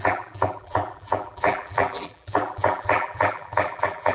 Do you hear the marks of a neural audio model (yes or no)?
yes